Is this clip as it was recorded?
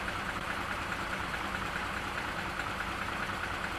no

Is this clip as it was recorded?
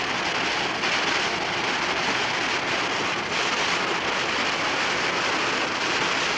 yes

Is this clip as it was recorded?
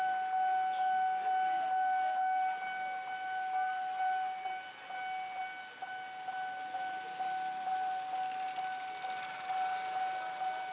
yes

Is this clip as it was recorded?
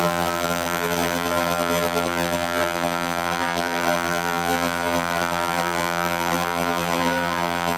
no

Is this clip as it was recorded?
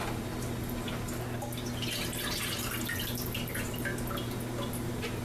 yes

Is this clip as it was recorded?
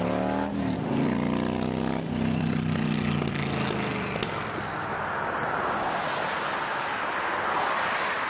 yes